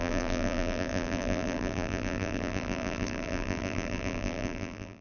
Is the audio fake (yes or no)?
yes